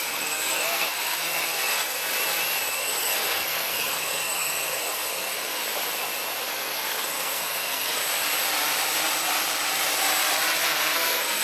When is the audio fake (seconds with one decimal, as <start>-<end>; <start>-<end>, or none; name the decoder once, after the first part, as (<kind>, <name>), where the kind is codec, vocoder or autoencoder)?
0.0-2.0 (codec, SNAC); 2.7-5.6; 6.5-8.0; 10.6-11.4